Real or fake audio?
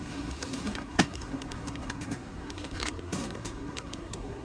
fake